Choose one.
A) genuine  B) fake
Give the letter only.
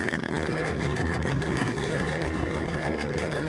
B